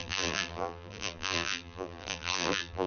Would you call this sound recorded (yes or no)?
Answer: no